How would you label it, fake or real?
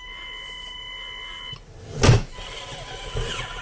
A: real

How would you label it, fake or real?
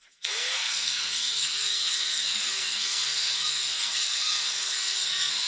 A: fake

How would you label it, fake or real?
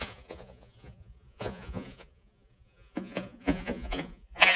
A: fake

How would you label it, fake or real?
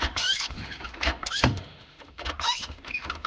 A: fake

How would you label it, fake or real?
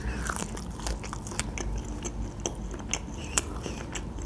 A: real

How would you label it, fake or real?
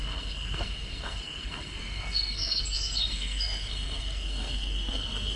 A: fake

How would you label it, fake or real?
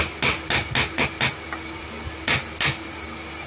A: real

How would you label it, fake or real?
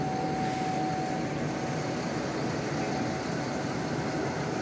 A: real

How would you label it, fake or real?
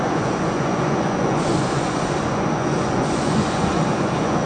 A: fake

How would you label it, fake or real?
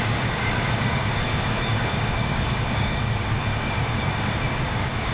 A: fake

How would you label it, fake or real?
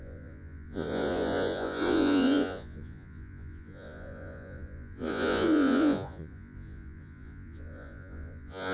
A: fake